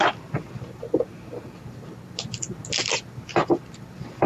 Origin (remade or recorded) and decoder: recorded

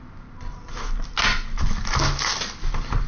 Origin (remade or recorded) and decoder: recorded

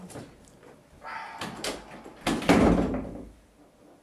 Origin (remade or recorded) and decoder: recorded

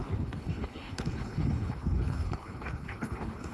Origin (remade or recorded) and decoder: remade, codec, HILCodec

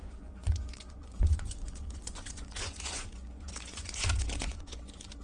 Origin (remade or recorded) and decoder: remade, vocoder, Vocos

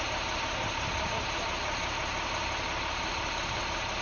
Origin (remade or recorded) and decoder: recorded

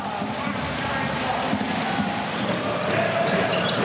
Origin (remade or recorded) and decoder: recorded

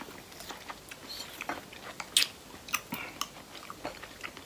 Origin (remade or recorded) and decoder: recorded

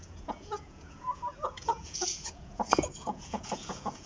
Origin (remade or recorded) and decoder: remade, vocoder, Vocos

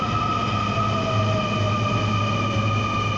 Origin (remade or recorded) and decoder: recorded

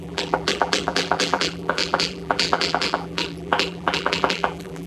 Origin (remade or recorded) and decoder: remade, vocoder, BigVGAN v2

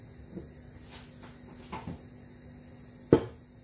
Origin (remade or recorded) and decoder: recorded